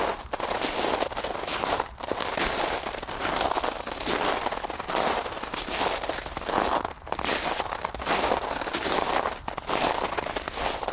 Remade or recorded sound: recorded